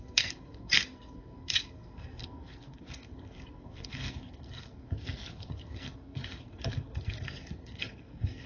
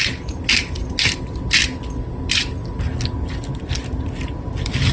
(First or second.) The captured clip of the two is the second